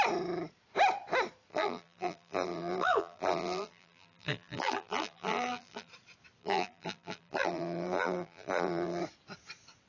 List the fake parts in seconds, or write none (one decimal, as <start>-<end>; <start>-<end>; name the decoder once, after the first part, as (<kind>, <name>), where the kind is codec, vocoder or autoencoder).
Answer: 1.5-5.9 (vocoder, BigVGAN v2); 6.4-9.0